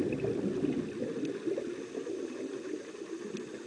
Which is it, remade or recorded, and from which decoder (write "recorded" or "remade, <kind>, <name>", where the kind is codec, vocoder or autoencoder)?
recorded